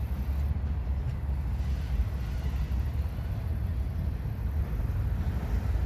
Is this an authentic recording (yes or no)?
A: yes